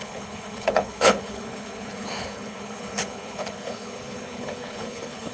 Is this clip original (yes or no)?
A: no